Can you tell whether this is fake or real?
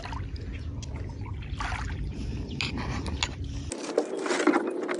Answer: real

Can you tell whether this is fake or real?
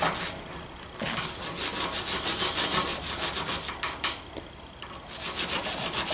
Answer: real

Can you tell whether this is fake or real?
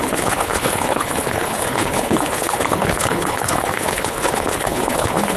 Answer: fake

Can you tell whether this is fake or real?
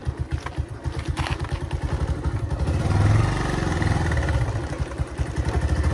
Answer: real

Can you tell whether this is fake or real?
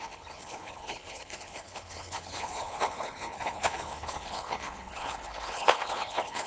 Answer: fake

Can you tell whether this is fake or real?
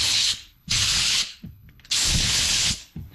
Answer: fake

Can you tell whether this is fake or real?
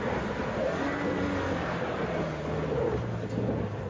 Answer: real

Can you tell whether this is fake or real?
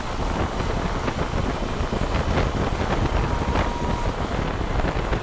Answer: real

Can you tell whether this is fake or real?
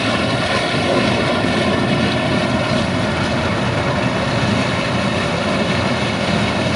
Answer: real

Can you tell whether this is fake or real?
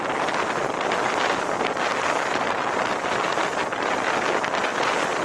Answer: real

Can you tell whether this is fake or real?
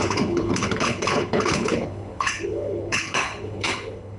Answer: fake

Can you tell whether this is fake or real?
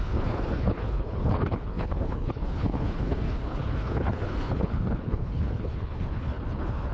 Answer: fake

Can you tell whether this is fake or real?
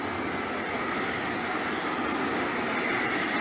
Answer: real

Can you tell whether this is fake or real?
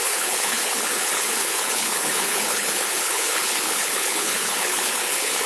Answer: fake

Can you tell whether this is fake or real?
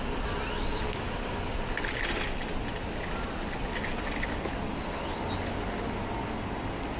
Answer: real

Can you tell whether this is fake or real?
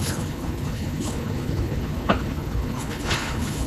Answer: fake